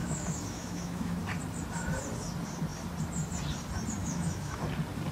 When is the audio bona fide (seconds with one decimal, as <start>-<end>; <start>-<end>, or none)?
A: 1.2-4.0; 4.6-5.1